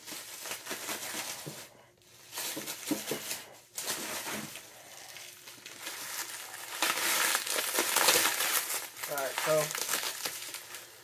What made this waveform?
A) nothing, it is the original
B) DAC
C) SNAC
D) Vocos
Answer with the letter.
A